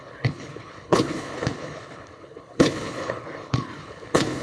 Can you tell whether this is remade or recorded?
remade